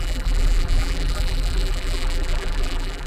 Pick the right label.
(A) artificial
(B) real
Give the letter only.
A